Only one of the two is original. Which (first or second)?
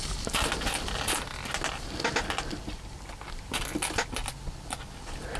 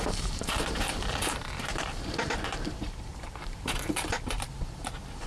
first